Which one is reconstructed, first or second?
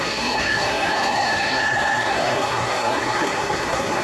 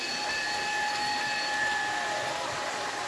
first